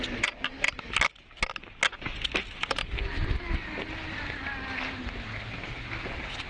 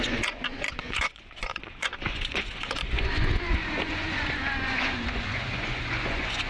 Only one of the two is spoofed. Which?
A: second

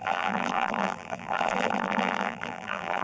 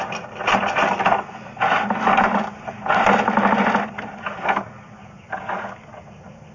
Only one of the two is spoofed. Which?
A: first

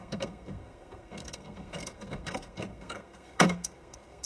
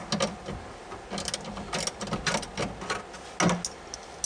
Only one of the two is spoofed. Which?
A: first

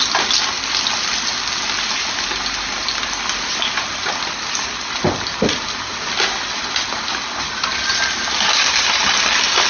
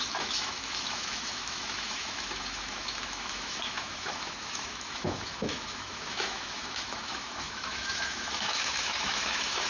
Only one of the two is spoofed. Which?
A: second